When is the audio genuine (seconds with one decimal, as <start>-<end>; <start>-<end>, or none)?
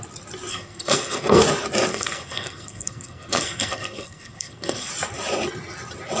0.0-0.5; 1.4-1.9; 4.9-6.2